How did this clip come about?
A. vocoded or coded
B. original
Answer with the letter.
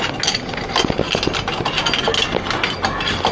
B